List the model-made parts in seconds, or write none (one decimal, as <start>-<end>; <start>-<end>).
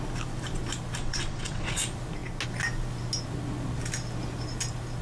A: 1.0-1.8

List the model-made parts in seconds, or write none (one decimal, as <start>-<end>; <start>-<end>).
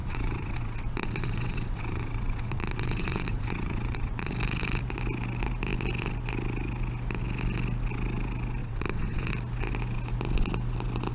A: 0.0-4.3; 8.6-9.3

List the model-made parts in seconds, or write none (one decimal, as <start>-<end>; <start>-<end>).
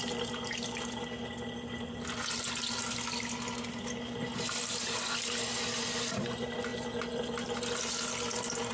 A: none